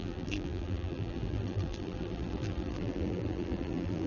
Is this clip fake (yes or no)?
yes